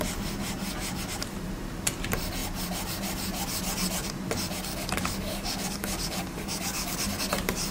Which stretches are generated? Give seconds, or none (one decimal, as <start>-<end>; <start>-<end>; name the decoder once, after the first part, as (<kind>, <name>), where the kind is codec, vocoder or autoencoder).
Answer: 4.7-7.0 (codec, DAC)